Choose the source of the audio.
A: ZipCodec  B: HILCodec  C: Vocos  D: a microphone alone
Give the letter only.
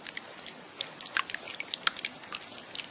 D